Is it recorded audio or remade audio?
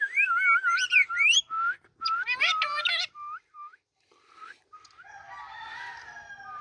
recorded